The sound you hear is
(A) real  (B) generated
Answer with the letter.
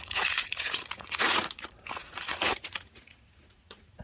B